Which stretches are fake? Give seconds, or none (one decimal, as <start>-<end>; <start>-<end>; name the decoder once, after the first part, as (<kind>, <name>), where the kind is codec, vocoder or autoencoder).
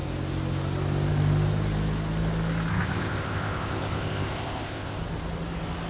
2.7-5.0 (codec, ZipCodec)